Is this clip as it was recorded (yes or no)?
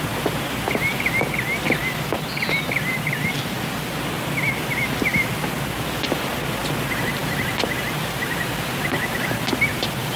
yes